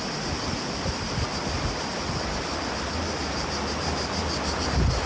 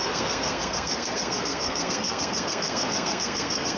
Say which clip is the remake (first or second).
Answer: second